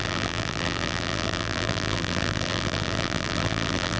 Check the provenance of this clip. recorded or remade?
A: remade